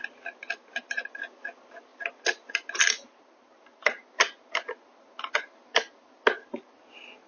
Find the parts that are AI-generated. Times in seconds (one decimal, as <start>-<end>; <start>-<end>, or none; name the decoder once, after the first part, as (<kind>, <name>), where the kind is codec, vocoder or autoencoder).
none